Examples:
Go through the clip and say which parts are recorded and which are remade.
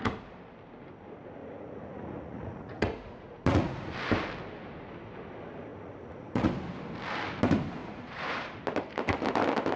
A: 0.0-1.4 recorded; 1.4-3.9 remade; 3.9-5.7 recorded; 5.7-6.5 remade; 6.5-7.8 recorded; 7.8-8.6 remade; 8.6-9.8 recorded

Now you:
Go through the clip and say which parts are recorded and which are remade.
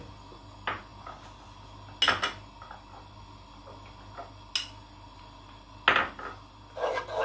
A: 0.0-7.2 recorded